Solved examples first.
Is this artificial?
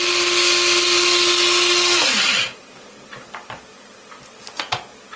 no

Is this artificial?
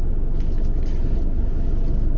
no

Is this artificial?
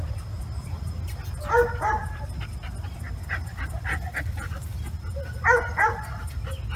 no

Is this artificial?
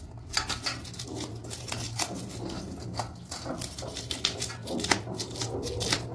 no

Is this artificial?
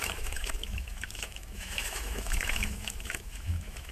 yes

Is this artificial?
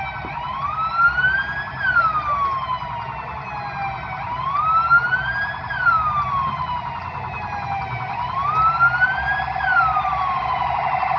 no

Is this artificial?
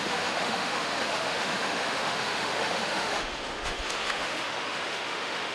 yes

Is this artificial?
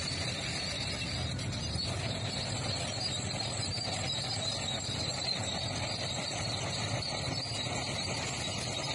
no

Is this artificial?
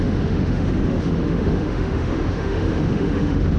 yes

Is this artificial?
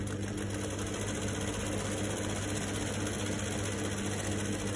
no